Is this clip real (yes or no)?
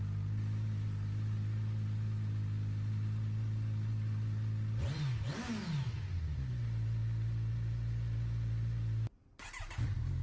yes